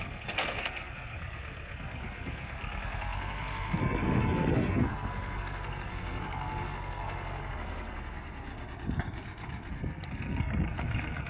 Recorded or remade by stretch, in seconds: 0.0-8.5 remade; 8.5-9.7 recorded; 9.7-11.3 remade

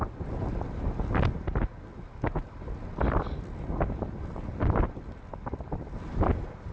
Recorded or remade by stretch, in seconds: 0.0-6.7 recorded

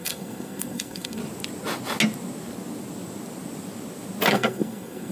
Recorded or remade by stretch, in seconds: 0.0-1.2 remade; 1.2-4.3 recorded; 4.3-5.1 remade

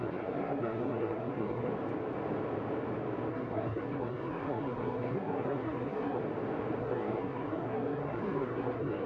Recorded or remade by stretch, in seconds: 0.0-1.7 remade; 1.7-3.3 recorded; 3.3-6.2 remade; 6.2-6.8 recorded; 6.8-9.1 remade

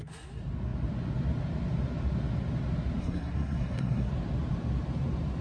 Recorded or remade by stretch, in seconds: 0.0-3.0 recorded; 3.0-4.1 remade; 4.1-5.4 recorded